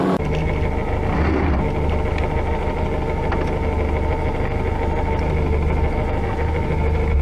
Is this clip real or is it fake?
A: real